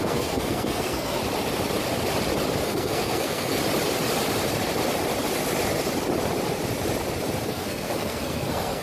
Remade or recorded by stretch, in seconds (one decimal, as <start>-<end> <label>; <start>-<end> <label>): 0.0-1.2 remade; 1.2-2.6 recorded; 2.6-3.6 remade; 3.6-7.5 recorded; 7.5-8.8 remade